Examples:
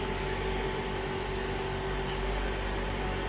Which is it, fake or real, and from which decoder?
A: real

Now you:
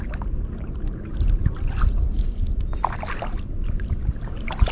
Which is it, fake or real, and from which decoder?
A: real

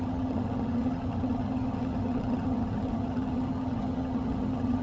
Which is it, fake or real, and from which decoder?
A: fake, vocoder, HiFi-GAN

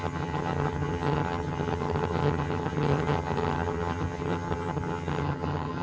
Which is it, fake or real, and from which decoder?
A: fake, vocoder, HiFi-GAN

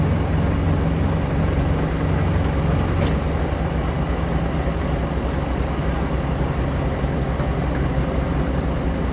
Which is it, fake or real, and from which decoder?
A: real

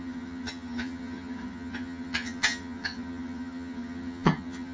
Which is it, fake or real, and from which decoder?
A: fake, vocoder, HiFi-GAN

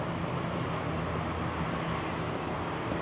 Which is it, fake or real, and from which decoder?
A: real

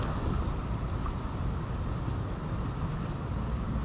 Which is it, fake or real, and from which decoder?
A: real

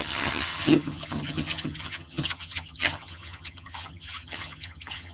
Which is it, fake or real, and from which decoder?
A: fake, vocoder, HiFi-GAN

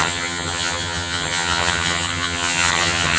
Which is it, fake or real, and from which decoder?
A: fake, vocoder, HiFi-GAN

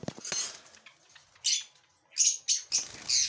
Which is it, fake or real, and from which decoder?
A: real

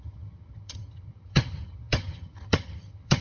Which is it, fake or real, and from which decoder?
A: fake, vocoder, HiFi-GAN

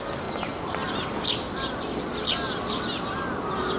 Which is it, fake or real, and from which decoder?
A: real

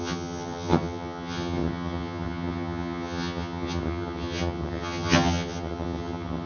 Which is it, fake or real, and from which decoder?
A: fake, vocoder, HiFi-GAN